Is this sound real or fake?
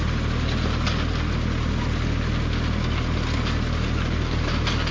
real